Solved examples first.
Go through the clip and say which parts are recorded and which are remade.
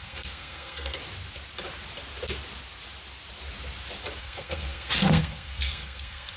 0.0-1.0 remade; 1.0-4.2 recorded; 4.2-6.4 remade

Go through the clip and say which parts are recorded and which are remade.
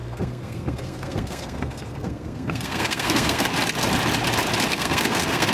0.0-3.5 remade; 3.5-4.7 recorded; 4.7-5.5 remade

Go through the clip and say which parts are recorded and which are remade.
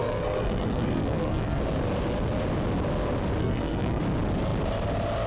0.0-1.6 remade; 1.6-3.4 recorded; 3.4-4.0 remade; 4.0-5.3 recorded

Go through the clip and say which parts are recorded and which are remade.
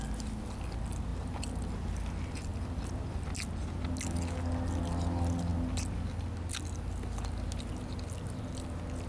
0.0-9.1 recorded